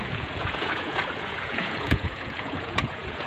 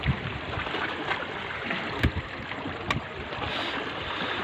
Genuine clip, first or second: second